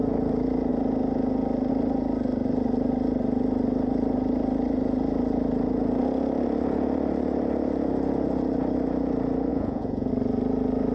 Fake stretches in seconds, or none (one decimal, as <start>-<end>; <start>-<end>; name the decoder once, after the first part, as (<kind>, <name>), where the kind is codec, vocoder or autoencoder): 9.5-10.1 (vocoder, Vocos)